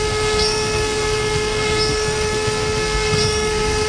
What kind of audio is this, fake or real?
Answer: fake